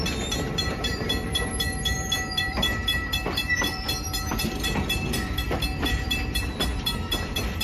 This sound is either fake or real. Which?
fake